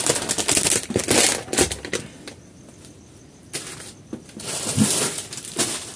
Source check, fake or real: real